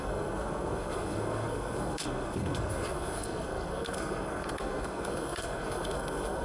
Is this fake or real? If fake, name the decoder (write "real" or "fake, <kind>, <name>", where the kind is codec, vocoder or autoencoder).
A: fake, codec, SNAC